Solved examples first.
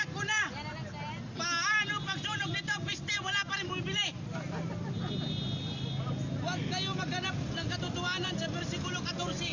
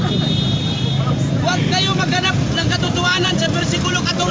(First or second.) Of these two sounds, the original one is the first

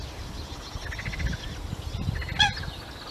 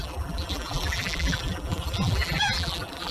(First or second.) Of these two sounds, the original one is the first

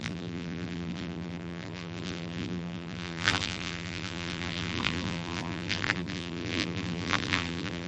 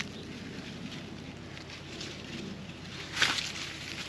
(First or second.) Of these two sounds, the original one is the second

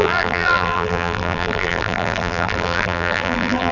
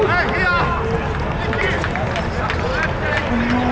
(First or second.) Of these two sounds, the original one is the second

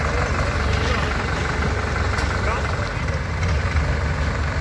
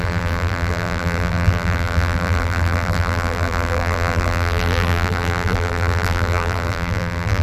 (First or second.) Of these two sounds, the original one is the first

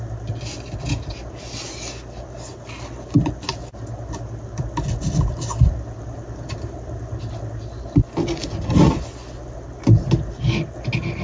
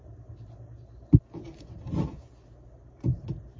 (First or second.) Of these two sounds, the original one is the first